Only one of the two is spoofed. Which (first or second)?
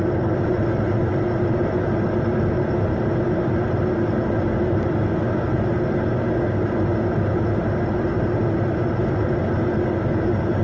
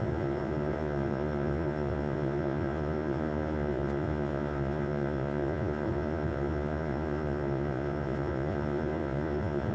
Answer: second